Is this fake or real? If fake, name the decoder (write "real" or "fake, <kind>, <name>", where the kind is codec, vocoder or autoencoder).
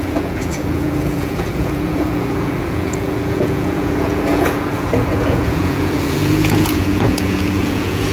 fake, vocoder, Vocos